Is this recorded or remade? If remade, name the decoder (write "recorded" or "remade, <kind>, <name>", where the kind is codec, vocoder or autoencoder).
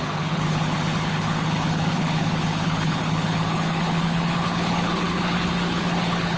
remade, codec, HILCodec